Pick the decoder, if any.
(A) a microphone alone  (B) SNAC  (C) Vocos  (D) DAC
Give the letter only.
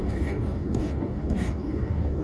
D